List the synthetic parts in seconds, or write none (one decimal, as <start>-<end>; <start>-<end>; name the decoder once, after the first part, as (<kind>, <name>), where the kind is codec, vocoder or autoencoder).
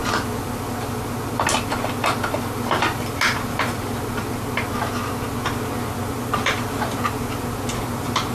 none